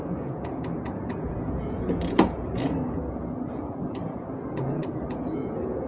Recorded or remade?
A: remade